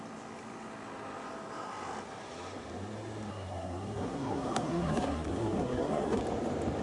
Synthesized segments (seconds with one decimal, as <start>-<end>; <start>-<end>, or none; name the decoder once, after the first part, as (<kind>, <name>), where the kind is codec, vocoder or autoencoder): 3.3-6.2 (codec, SNAC)